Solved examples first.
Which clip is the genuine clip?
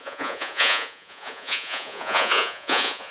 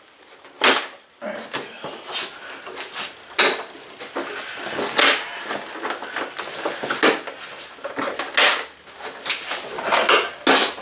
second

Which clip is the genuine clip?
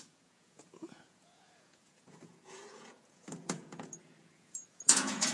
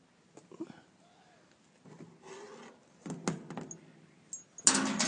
second